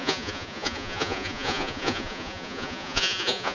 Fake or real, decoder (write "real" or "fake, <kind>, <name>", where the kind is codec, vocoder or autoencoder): fake, vocoder, Vocos